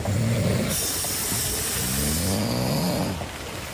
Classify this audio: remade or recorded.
recorded